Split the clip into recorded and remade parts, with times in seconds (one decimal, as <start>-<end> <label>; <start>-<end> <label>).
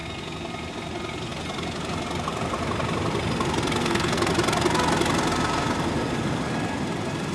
0.0-3.8 recorded; 3.8-4.3 remade; 4.3-7.3 recorded